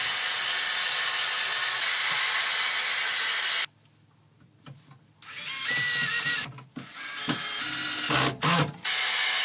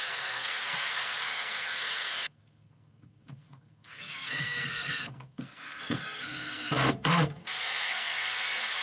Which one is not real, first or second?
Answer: second